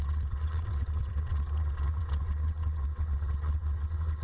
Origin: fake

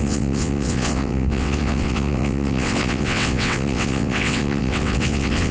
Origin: fake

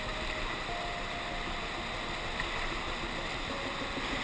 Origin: real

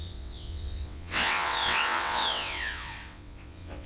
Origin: fake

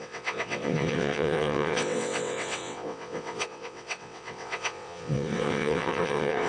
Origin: fake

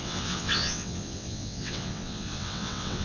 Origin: fake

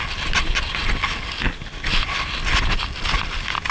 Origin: real